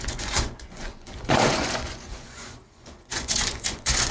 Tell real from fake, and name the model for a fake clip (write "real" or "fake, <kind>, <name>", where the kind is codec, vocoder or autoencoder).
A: fake, vocoder, Vocos